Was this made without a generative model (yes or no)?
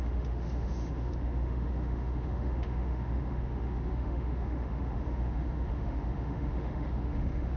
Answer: no